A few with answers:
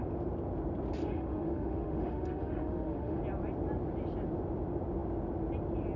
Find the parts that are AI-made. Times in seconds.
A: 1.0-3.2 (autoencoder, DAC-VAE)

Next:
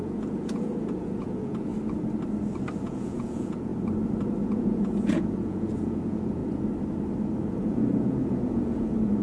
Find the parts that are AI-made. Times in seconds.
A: 0.0-1.7 (vocoder, Vocos); 2.8-3.7; 4.4-6.4; 7.6-9.2

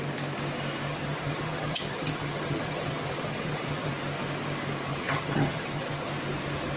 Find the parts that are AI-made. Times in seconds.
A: 0.9-3.9 (vocoder, HiFi-GAN); 4.9-6.1

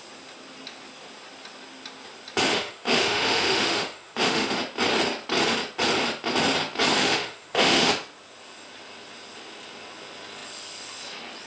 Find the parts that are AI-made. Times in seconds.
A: 2.5-4.6 (autoencoder, DAC-VAE); 7.0-7.9